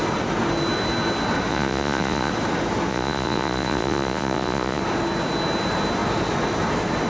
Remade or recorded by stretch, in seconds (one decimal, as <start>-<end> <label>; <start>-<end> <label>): 0.0-1.5 recorded; 1.5-2.3 remade; 2.3-2.9 recorded; 2.9-4.8 remade; 4.8-7.1 recorded